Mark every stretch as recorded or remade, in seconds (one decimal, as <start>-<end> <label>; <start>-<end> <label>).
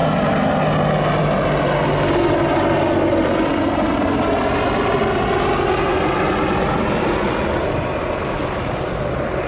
0.0-9.5 recorded